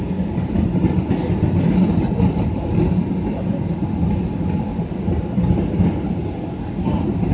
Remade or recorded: recorded